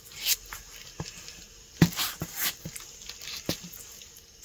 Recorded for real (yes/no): yes